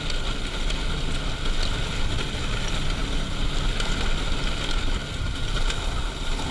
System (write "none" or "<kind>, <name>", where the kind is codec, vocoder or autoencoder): none